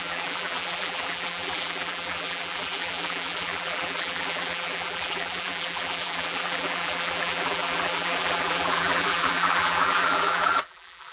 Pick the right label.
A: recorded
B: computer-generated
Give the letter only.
B